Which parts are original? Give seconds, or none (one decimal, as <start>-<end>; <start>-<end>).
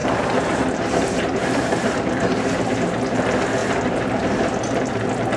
3.2-3.6; 4.5-5.4